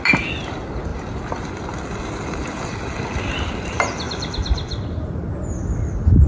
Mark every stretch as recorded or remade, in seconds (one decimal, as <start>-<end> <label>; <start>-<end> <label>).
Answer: 0.0-6.3 recorded